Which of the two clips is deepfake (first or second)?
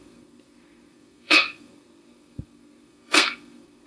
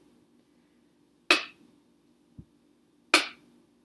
first